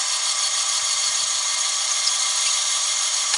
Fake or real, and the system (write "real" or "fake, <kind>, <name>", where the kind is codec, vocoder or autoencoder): real